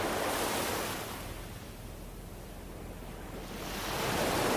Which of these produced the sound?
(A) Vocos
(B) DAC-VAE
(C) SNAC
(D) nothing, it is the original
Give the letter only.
D